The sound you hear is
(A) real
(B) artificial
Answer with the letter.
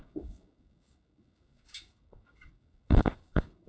B